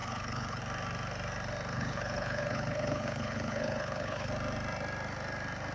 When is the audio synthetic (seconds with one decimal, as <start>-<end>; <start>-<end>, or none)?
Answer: 0.0-0.6; 1.7-4.3